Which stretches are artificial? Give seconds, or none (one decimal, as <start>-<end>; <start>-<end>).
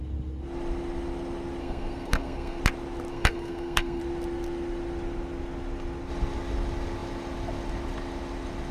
1.6-2.6; 3.1-4.0